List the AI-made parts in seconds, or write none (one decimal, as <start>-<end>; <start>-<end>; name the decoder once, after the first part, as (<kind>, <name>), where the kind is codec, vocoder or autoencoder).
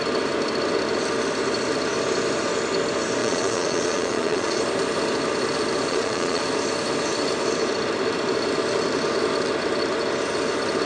3.2-4.6 (vocoder, Vocos); 5.9-6.4